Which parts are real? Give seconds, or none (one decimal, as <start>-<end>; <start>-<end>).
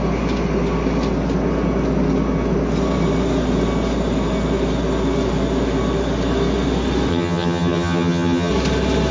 0.0-7.1; 8.5-9.1